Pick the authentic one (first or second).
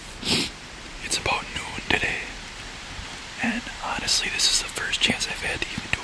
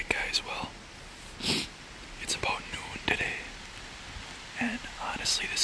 second